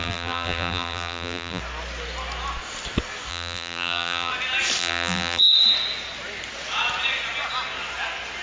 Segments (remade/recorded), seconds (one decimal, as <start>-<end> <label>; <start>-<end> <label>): 0.0-1.6 remade; 1.6-3.3 recorded; 3.3-4.3 remade; 4.3-4.8 recorded; 4.8-5.4 remade; 5.4-8.4 recorded